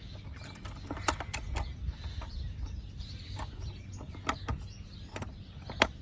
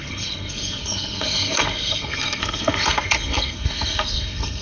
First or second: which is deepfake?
second